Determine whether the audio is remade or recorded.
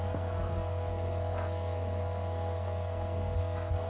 remade